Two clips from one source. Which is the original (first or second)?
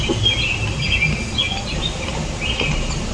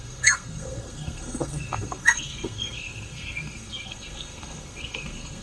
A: first